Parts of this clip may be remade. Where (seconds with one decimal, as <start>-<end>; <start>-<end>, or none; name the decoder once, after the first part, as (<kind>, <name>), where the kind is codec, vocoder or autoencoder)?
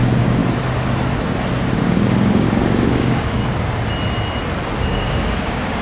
0.0-0.4 (codec, DAC); 1.8-3.4; 4.8-5.8